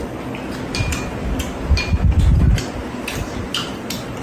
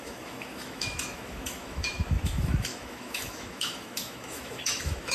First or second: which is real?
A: first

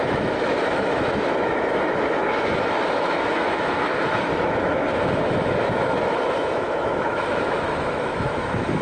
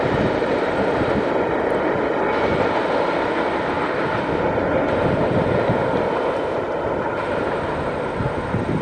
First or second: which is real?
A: second